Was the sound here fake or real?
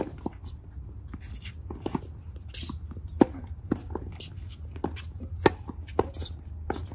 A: real